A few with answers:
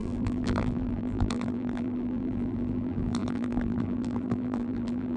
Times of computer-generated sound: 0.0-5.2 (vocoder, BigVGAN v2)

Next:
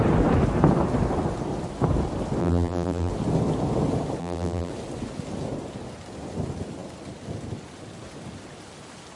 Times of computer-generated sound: 2.4-3.1 (vocoder, BigVGAN v2); 4.2-4.7

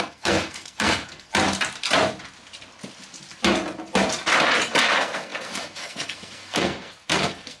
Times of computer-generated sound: 0.0-1.3 (codec, SNAC); 4.8-7.6

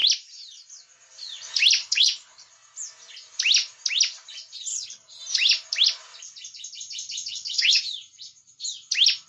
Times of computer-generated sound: 1.8-2.5 (codec, HILCodec); 4.7-5.2; 7.3-7.8

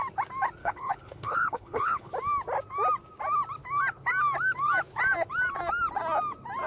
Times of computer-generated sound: 0.6-2.1 (codec, HILCodec)

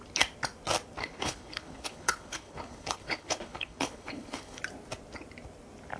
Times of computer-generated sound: 1.0-4.6 (codec, HILCodec)

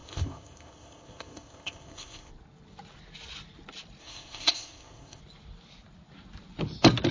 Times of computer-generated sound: 0.0-2.3 (codec, ZipCodec); 4.0-5.2

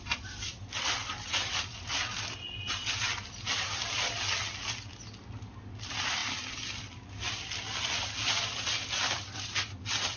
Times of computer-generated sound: none